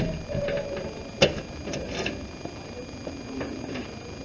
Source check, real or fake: real